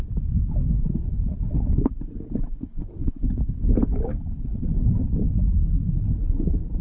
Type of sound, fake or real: fake